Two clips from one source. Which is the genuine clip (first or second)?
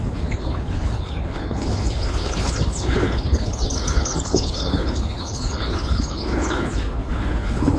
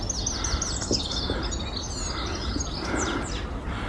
second